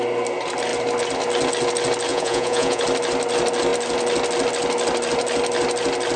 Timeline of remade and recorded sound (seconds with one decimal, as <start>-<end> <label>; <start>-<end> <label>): 0.0-2.1 recorded; 2.1-2.8 remade; 2.8-6.2 recorded